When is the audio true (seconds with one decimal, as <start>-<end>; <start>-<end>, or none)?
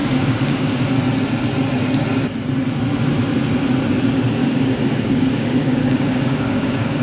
0.8-4.4